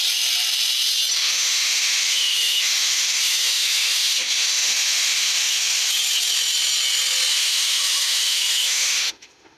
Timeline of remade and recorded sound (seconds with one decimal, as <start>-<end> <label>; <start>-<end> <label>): 0.0-1.2 recorded; 1.2-5.9 remade; 5.9-7.3 recorded; 7.3-9.6 remade